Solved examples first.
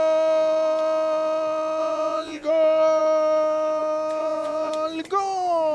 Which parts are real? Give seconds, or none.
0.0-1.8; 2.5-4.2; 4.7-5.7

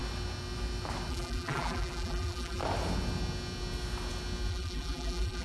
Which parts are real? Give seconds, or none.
0.0-1.1; 2.6-4.5

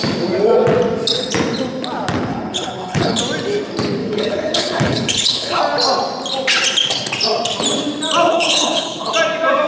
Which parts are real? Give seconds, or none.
0.0-2.3; 3.2-4.0; 5.6-8.3; 9.1-9.7